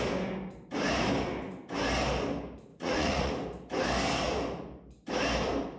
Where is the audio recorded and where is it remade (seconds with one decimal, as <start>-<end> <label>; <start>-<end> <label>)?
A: 0.0-2.7 recorded; 2.7-3.3 remade; 3.3-5.8 recorded